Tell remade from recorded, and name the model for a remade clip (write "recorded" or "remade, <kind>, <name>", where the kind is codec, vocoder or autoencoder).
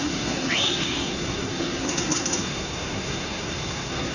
remade, codec, SNAC